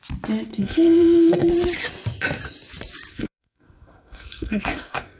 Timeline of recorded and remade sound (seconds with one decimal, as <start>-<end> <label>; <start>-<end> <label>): 0.0-0.5 recorded; 0.5-1.5 remade; 1.5-3.1 recorded; 3.1-5.2 remade